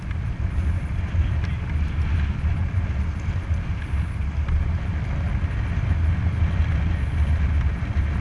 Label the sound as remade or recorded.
recorded